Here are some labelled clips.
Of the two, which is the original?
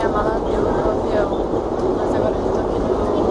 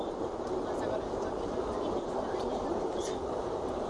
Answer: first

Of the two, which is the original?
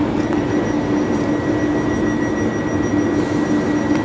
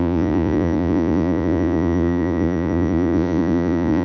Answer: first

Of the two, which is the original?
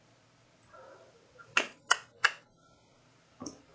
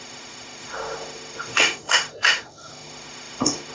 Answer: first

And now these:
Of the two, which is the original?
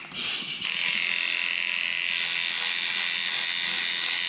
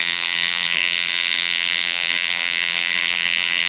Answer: first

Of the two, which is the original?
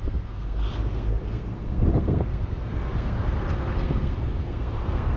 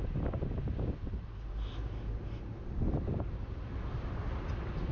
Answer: second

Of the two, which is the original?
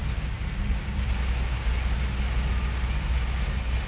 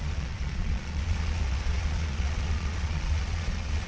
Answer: first